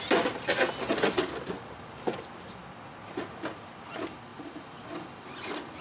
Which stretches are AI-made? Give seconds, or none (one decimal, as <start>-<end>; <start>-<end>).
none